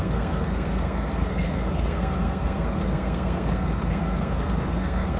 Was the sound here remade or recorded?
remade